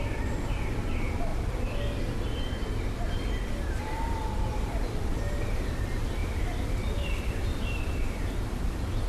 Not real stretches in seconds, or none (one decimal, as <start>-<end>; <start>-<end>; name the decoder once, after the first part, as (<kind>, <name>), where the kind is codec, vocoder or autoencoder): 0.0-9.1 (vocoder, BigVGAN v2)